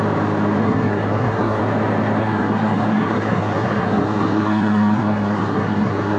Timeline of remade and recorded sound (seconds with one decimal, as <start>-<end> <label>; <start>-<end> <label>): 0.0-0.6 recorded; 0.6-1.6 remade; 1.6-2.2 recorded; 2.2-6.2 remade